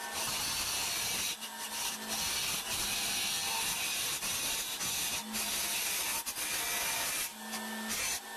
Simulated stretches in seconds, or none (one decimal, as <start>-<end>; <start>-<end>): 0.8-1.9; 7.3-8.0